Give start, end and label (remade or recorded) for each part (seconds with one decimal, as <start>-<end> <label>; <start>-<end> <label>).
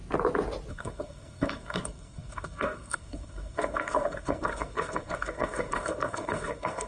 0.0-0.7 recorded; 0.7-6.9 remade